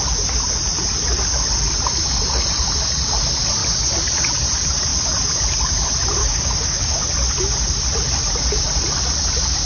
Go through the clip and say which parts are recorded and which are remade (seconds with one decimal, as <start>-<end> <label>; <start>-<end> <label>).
0.0-6.2 recorded; 6.2-7.0 remade; 7.0-9.7 recorded